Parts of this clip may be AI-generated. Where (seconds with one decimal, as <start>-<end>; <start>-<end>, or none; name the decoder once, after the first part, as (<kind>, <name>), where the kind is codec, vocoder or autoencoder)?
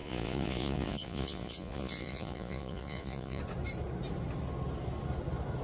0.0-3.4 (vocoder, Vocos)